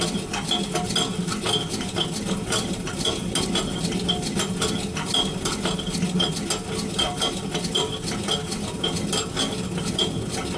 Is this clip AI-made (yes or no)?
no